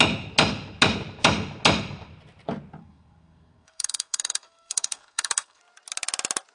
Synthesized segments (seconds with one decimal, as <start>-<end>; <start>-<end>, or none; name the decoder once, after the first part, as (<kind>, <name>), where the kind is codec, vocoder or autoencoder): 2.8-5.6 (codec, SNAC)